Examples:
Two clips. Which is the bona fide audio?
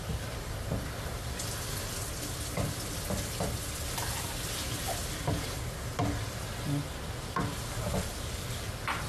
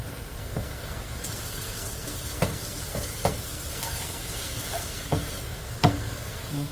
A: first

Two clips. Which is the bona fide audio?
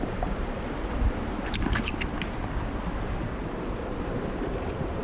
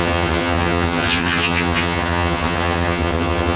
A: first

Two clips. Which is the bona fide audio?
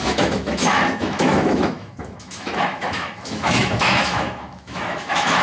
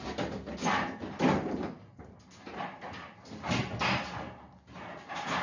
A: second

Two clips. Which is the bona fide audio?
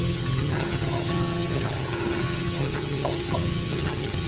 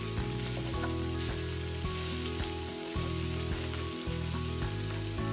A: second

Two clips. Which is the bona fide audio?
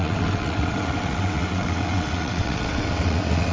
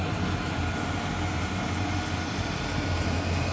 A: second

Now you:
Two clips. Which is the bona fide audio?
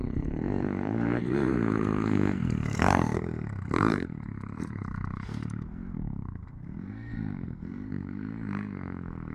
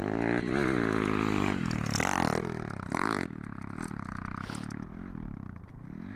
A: second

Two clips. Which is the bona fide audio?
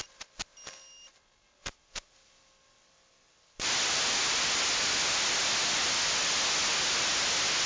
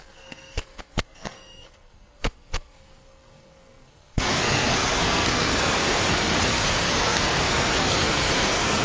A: first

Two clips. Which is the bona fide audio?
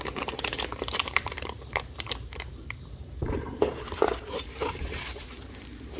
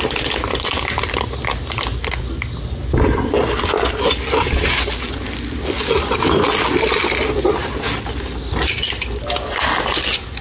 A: second